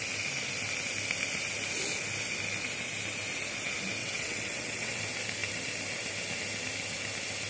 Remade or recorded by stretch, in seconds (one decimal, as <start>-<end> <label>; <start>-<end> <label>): 0.0-4.0 recorded; 4.0-5.0 remade; 5.0-7.5 recorded